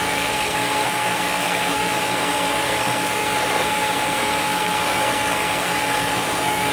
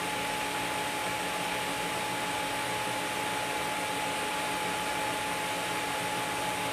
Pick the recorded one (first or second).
second